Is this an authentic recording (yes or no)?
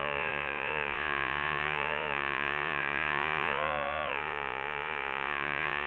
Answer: no